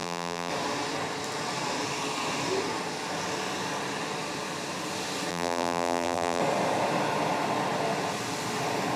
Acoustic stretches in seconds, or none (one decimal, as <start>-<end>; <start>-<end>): 0.5-5.3; 6.4-9.0